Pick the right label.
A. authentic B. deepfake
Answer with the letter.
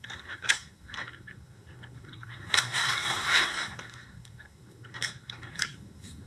B